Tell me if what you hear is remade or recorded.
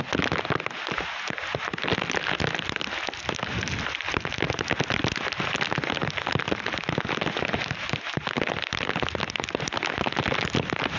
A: recorded